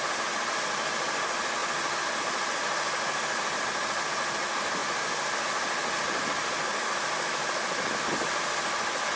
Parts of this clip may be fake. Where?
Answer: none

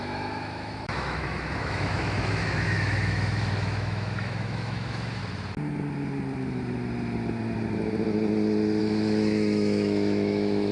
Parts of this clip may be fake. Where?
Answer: 0.0-5.2 (autoencoder, DAC-VAE); 8.8-10.7

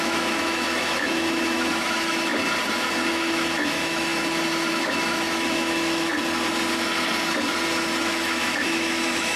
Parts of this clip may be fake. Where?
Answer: 0.0-2.3 (autoencoder, DAC-VAE); 3.1-4.1; 4.7-6.1; 8.0-9.4

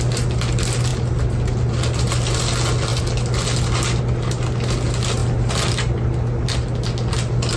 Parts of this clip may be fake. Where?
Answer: none

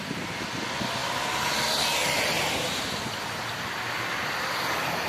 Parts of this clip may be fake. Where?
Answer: none

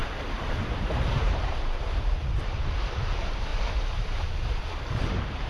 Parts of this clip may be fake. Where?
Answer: 0.0-5.5 (vocoder, BigVGAN v2)